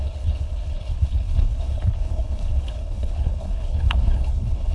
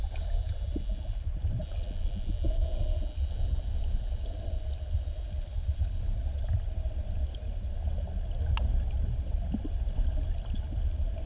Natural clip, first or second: second